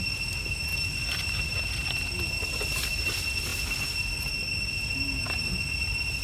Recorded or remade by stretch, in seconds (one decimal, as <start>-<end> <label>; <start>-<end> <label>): 0.0-6.2 recorded